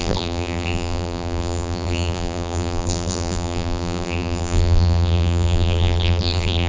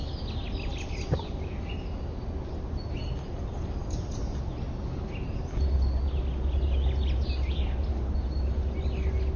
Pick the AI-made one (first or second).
first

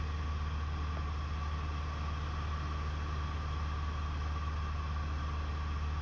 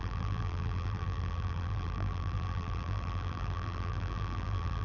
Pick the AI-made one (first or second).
second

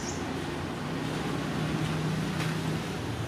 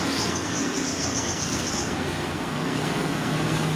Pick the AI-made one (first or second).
second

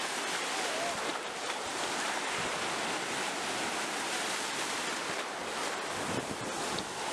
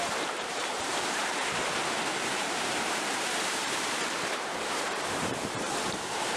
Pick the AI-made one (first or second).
second